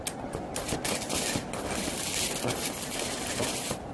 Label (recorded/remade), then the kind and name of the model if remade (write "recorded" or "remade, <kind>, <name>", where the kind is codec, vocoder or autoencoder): recorded